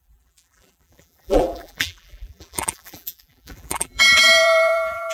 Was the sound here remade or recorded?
remade